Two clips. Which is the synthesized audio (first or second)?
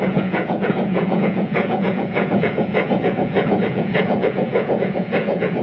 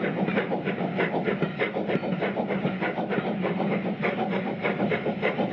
first